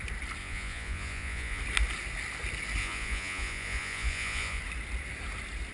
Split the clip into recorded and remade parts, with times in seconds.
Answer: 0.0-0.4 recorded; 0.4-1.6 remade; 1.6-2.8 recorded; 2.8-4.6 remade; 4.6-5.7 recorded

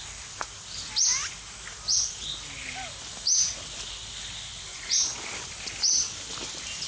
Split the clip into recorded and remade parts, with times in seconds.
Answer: 0.0-4.7 recorded; 4.7-5.2 remade; 5.2-6.9 recorded

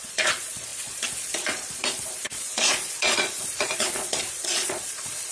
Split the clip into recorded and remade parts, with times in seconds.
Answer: 0.0-5.3 remade

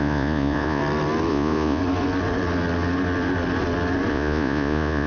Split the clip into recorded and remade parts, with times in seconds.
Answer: 0.0-0.8 remade; 0.8-1.3 recorded; 1.3-1.8 remade; 1.8-4.1 recorded; 4.1-5.1 remade

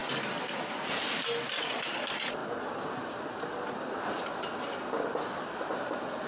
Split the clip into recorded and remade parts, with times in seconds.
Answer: 0.0-6.3 recorded

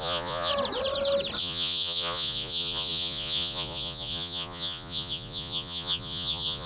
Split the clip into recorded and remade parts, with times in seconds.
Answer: 0.0-0.5 remade; 0.5-1.4 recorded; 1.4-6.7 remade

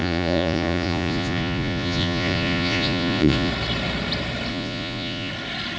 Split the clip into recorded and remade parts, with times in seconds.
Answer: 0.0-3.5 remade; 3.5-4.5 recorded; 4.5-5.3 remade; 5.3-5.8 recorded

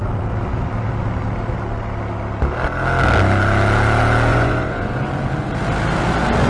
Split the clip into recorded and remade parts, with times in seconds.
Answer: 0.0-4.3 recorded; 4.3-5.1 remade; 5.1-6.5 recorded